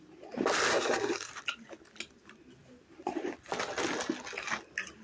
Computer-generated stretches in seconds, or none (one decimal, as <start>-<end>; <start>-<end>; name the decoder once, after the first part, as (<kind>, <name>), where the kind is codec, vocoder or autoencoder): 0.7-1.3 (codec, SNAC)